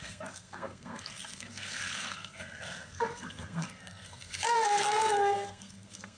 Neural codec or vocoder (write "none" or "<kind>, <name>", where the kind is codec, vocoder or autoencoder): codec, SNAC